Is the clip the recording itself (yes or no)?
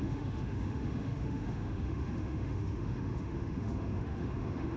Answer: no